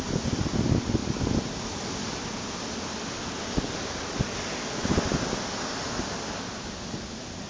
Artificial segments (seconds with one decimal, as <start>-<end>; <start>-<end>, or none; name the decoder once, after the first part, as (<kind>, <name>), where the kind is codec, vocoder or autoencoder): none